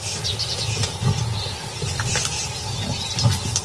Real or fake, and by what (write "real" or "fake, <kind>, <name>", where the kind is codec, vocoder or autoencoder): real